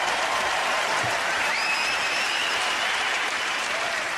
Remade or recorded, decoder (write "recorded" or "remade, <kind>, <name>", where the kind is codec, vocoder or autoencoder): remade, vocoder, BigVGAN v2